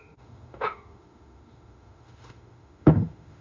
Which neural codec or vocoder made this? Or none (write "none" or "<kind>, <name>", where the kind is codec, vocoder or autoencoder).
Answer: autoencoder, DAC-VAE